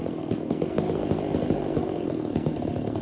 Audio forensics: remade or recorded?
remade